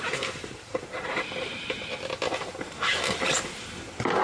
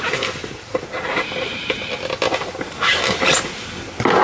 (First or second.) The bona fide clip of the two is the second